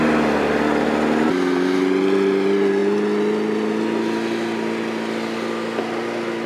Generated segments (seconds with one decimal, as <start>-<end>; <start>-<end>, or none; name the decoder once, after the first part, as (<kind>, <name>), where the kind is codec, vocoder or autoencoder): none